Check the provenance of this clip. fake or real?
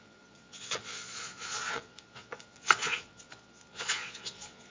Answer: fake